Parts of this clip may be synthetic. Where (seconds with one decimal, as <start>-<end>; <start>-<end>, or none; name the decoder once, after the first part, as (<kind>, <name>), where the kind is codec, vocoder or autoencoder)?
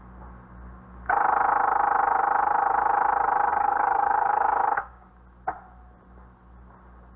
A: 3.5-5.1 (codec, DAC)